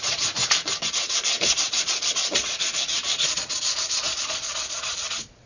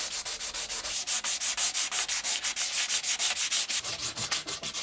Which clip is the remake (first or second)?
first